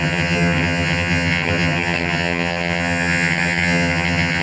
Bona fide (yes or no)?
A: no